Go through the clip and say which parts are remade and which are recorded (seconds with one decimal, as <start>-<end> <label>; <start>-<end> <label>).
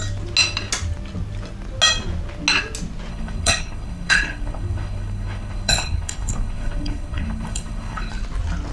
0.0-3.1 recorded; 3.1-8.1 remade; 8.1-8.7 recorded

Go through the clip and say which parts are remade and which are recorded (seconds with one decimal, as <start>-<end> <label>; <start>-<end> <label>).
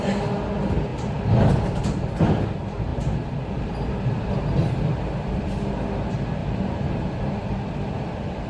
0.0-8.5 recorded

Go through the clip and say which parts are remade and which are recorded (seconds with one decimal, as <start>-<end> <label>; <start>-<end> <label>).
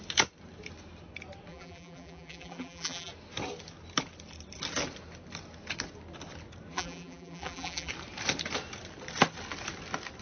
0.0-1.5 recorded; 1.5-3.1 remade; 3.1-6.7 recorded; 6.7-7.9 remade; 7.9-10.2 recorded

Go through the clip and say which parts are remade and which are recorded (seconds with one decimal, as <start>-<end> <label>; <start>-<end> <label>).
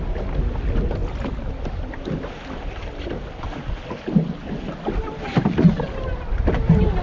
0.0-7.0 recorded